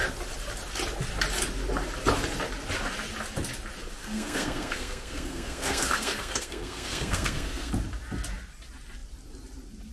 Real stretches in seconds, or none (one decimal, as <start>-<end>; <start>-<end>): 0.0-4.0; 7.7-9.9